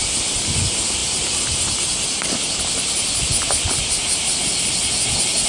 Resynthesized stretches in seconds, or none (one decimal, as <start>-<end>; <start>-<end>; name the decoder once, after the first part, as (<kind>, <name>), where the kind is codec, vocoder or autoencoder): none